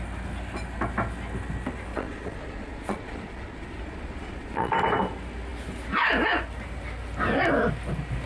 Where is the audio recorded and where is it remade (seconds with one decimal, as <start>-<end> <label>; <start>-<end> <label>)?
0.0-1.9 recorded; 1.9-4.7 remade; 4.7-8.3 recorded